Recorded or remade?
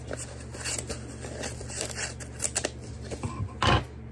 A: recorded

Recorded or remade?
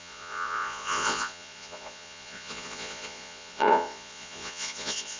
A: remade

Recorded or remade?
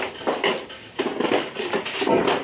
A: recorded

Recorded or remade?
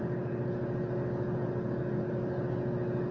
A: recorded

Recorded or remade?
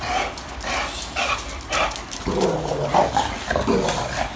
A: recorded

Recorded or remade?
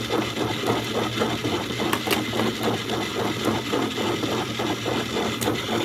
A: recorded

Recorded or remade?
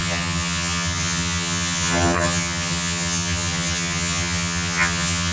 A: remade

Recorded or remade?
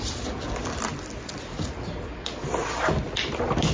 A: recorded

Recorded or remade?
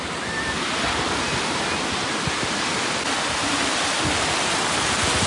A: recorded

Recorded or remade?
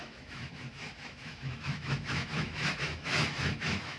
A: remade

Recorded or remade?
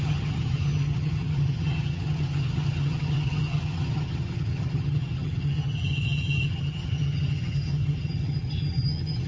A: remade